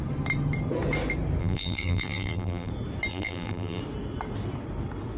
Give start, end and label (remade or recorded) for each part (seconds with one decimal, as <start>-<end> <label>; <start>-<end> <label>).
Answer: 0.0-1.4 recorded; 1.4-2.7 remade; 2.7-3.1 recorded; 3.1-3.8 remade; 3.8-5.2 recorded